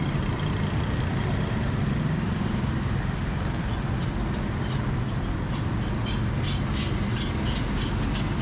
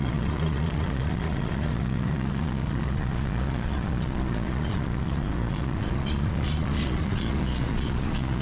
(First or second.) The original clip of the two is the first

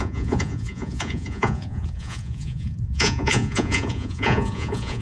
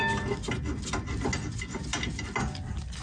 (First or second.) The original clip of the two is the second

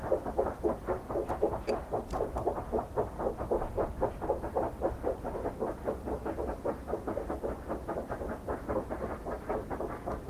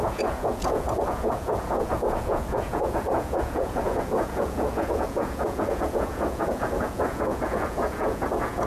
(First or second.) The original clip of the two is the first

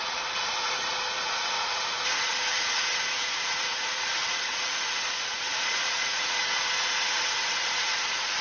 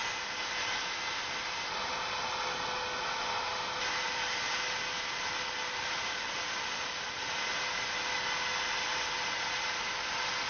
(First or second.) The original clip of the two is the second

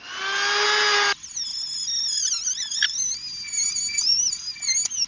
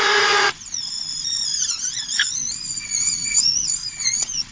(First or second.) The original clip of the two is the first